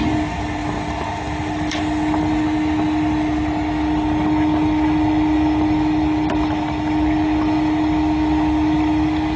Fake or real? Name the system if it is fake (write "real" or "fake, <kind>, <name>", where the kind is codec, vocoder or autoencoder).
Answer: real